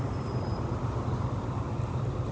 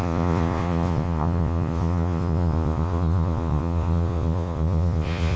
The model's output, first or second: second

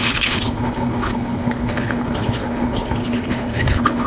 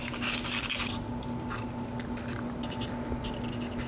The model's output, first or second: first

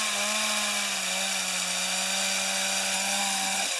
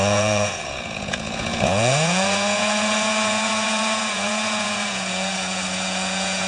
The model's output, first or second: second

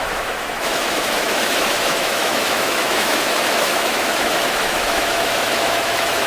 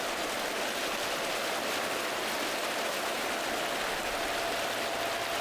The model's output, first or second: first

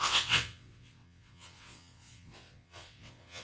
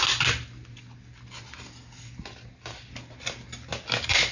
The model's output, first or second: first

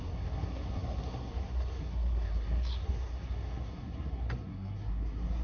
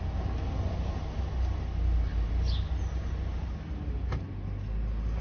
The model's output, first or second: first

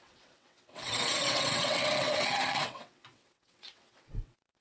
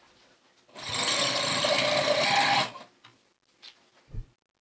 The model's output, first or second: first